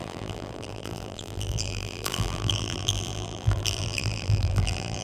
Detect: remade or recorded remade